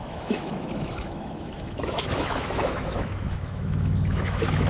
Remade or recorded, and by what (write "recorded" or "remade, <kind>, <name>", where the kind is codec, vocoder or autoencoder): remade, autoencoder, DAC-VAE